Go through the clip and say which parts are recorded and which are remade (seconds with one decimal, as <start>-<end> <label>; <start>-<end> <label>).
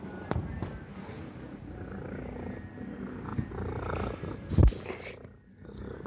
0.0-6.1 recorded